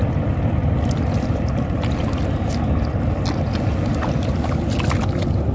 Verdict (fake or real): real